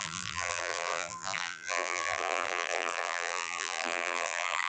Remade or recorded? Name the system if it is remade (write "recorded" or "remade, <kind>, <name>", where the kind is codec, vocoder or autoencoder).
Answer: remade, vocoder, BigVGAN v2